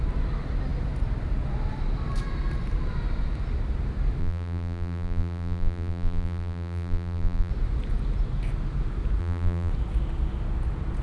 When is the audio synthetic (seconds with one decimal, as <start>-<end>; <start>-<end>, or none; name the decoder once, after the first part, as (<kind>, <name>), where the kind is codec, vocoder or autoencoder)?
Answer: 4.2-7.5 (vocoder, BigVGAN v2); 9.2-9.7